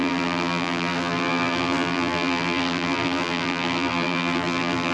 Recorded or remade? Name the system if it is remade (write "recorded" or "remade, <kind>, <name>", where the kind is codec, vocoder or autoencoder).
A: remade, vocoder, BigVGAN v2